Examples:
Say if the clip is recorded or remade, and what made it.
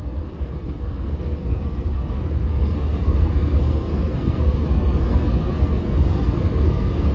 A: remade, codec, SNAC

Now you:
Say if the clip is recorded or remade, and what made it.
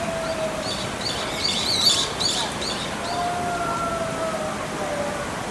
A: recorded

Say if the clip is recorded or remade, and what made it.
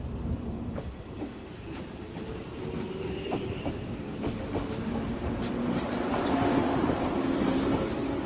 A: remade, vocoder, BigVGAN v2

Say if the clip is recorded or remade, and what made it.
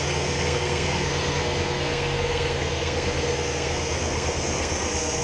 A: remade, codec, SNAC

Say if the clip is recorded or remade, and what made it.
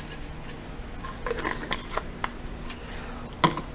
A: recorded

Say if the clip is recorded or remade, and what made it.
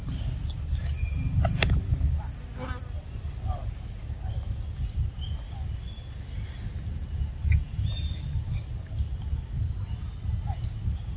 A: recorded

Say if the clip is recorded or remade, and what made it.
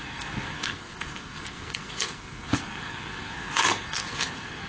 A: remade, codec, SNAC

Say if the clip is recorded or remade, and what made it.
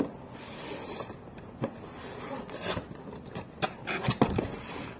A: recorded